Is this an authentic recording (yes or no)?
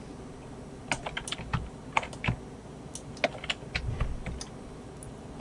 yes